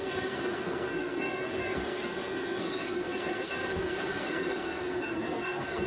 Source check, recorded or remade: remade